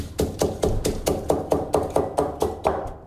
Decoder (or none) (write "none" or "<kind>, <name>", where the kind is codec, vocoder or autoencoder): none